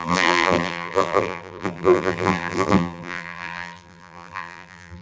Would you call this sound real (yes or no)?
no